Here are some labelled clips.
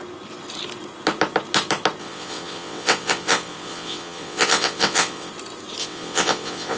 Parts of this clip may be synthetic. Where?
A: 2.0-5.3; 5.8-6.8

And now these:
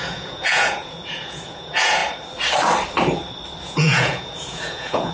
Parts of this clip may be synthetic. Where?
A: 0.0-2.0; 3.6-5.1

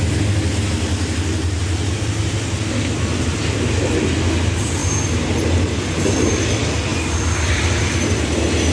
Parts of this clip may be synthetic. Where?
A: none